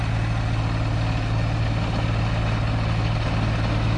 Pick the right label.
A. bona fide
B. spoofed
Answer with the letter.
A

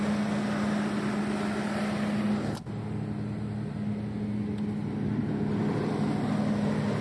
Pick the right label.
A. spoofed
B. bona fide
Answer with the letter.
B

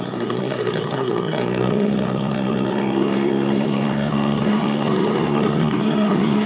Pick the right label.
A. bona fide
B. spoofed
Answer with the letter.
B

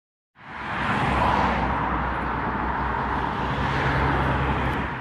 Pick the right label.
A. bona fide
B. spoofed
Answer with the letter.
A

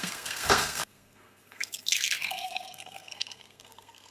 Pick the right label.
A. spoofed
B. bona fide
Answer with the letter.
A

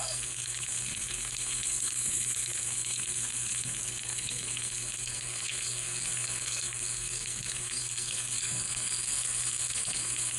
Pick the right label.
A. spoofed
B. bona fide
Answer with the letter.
A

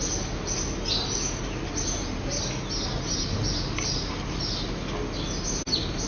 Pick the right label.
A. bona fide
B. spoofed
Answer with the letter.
A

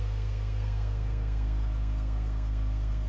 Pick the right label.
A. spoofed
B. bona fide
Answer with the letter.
A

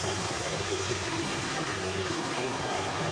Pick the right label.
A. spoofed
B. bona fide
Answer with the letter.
A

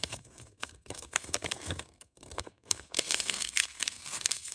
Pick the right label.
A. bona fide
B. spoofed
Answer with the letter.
B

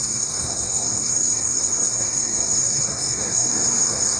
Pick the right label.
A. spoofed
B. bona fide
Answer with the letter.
A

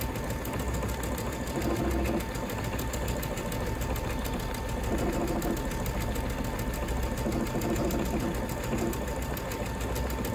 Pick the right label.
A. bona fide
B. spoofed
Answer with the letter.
A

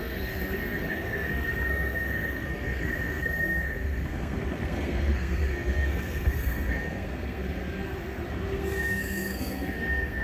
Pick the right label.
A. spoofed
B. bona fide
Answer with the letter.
A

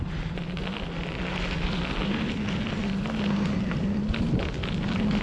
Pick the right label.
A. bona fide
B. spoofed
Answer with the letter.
A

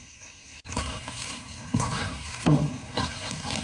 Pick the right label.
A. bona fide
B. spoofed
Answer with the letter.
B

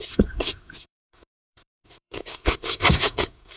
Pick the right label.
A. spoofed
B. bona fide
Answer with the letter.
A